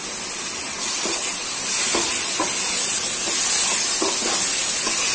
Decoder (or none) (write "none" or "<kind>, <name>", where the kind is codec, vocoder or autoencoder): none